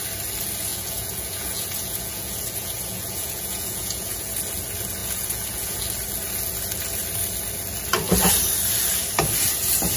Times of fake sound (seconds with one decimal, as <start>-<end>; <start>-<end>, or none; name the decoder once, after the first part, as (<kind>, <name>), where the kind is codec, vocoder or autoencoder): 0.7-4.4 (vocoder, Vocos); 5.0-5.8